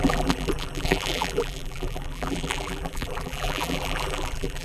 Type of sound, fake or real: fake